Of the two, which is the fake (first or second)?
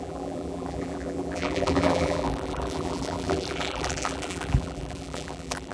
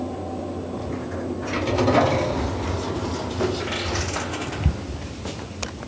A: first